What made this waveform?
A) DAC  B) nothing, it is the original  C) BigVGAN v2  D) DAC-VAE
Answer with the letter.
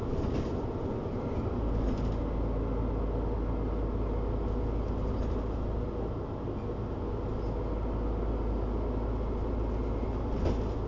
B